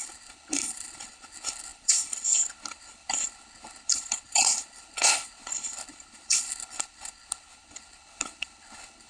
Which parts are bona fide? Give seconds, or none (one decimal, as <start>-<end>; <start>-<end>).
none